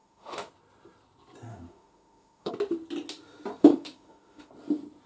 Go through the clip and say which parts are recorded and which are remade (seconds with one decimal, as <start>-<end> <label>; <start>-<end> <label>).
0.0-0.5 remade; 0.5-1.5 recorded; 1.5-2.5 remade; 2.5-3.6 recorded; 3.6-4.5 remade; 4.5-5.1 recorded